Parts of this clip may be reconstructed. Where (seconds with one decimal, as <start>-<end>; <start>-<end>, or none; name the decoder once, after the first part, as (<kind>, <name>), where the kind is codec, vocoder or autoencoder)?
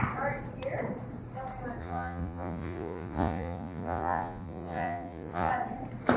1.8-5.5 (vocoder, Vocos)